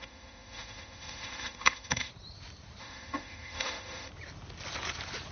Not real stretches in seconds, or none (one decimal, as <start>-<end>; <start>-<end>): 0.0-2.1; 2.8-4.1